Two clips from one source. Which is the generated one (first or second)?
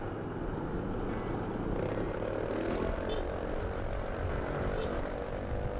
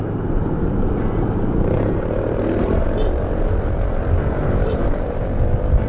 second